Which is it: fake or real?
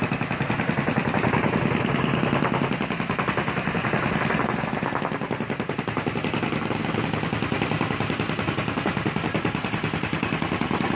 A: real